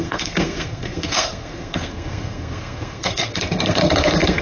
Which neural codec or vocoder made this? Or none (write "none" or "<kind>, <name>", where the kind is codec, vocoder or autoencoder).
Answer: codec, SNAC